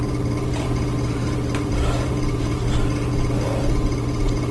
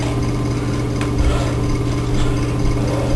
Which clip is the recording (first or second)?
second